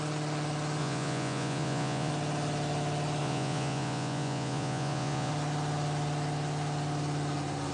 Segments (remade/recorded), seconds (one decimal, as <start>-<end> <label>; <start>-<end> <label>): 0.0-0.8 recorded; 0.8-2.1 remade; 2.1-3.2 recorded; 3.2-5.3 remade; 5.3-7.7 recorded